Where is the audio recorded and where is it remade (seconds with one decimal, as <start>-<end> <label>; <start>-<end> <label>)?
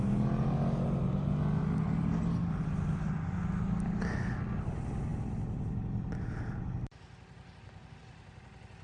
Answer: 0.0-8.8 recorded